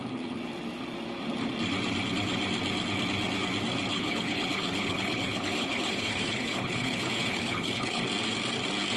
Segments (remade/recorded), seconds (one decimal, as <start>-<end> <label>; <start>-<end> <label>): 0.0-3.9 recorded; 3.9-8.0 remade; 8.0-9.0 recorded